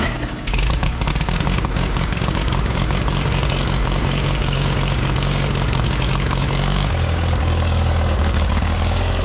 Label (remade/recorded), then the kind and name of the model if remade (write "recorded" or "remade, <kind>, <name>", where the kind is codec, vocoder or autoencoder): remade, codec, DAC